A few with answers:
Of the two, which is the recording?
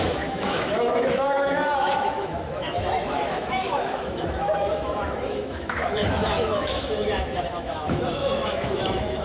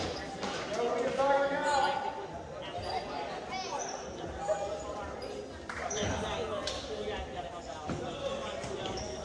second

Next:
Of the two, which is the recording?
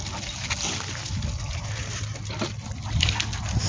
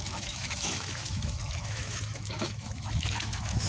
first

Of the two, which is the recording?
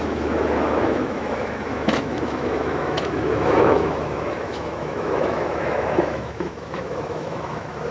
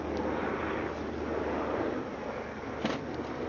second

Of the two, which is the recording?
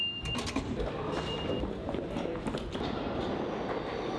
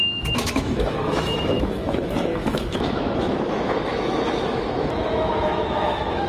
first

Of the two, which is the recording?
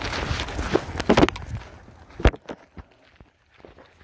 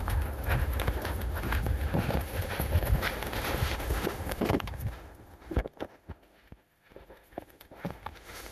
first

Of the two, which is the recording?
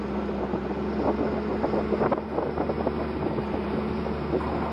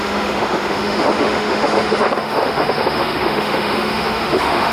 first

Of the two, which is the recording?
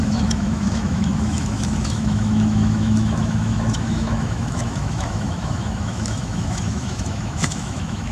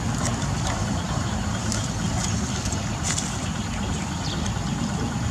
second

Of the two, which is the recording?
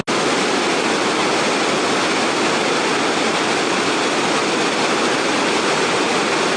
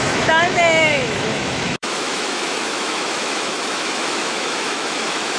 first